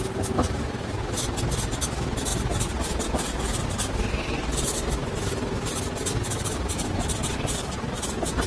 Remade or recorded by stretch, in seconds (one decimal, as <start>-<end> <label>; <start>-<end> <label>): 0.0-8.5 recorded